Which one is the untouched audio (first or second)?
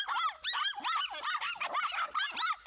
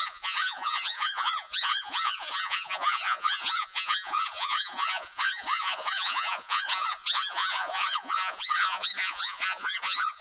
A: first